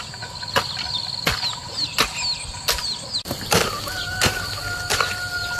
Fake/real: real